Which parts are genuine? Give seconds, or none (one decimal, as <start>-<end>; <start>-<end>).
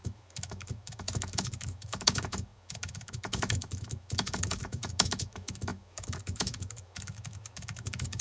none